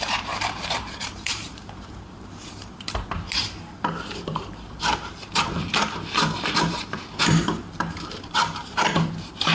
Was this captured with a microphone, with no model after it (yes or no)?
no